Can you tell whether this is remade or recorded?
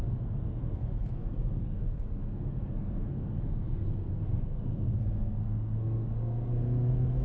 remade